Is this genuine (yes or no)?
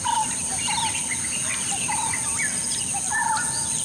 yes